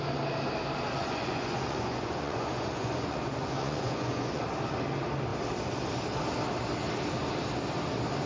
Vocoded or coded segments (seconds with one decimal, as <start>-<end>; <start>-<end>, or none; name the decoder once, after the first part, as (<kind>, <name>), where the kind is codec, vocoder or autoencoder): 1.0-4.4 (vocoder, Vocos)